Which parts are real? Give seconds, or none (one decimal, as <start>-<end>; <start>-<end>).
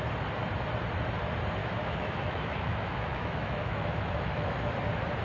0.0-1.6; 4.7-5.2